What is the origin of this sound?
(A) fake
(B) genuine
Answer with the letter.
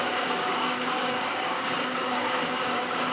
A